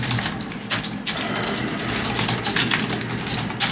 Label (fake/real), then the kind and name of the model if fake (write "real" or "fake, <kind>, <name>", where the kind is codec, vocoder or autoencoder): real